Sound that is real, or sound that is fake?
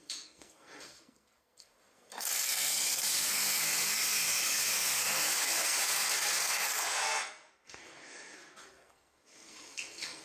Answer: fake